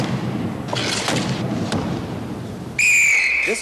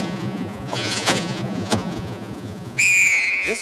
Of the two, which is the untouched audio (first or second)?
first